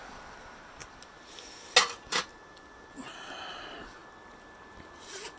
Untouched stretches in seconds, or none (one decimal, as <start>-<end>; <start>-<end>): 0.0-5.4